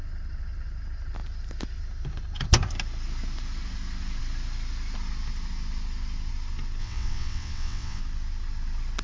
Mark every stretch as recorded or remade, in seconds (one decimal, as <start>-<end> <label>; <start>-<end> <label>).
0.0-6.8 recorded; 6.8-8.0 remade; 8.0-9.0 recorded